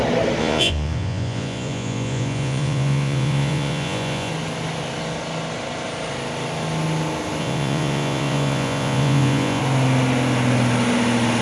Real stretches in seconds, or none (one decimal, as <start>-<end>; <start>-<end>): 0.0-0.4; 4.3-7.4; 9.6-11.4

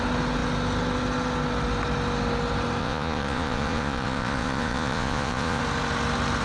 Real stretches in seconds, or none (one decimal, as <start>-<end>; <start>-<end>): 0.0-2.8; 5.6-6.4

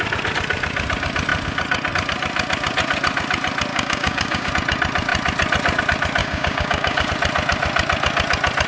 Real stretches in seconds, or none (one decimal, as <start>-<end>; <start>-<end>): 0.0-3.7; 4.5-6.2; 7.1-8.7